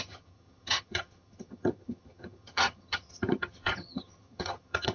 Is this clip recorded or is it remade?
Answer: remade